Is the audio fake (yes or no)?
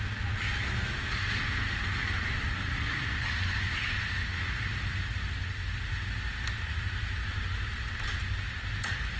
no